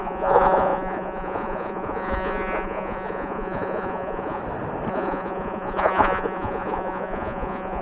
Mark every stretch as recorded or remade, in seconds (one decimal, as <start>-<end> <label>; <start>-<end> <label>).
0.0-4.4 remade; 4.4-4.9 recorded; 4.9-7.8 remade